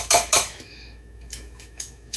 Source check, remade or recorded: remade